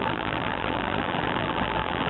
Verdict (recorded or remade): remade